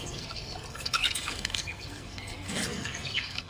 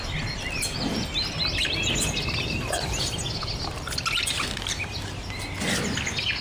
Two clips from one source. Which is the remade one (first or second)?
first